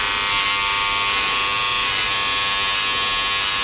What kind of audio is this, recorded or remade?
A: recorded